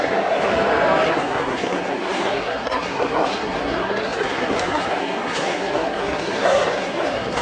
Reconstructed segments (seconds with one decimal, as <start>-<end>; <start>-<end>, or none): 0.0-0.5; 1.1-7.4